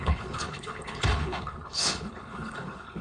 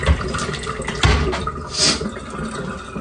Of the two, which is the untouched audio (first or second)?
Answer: second